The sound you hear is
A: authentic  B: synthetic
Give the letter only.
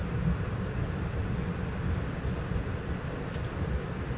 A